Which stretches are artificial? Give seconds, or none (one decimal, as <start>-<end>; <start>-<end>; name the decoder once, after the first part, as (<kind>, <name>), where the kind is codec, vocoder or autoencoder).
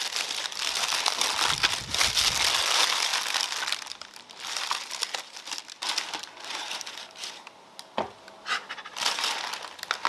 none